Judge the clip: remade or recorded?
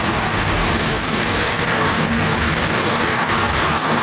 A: remade